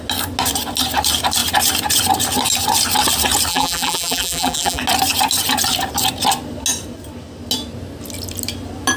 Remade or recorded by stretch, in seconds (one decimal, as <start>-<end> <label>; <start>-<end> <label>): 0.0-3.5 recorded; 3.5-4.8 remade; 4.8-9.0 recorded